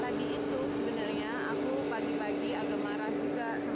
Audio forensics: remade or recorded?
recorded